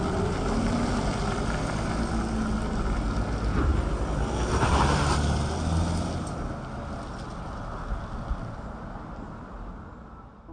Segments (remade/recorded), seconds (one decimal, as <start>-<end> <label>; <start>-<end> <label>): 0.0-10.5 recorded